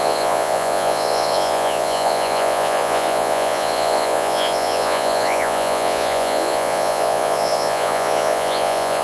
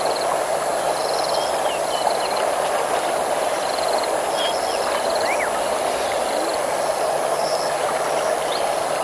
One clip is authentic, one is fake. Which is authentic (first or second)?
second